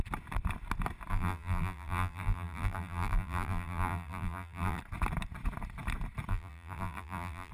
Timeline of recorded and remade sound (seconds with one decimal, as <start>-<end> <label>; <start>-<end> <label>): 0.0-1.1 recorded; 1.1-4.8 remade; 4.8-6.3 recorded; 6.3-7.5 remade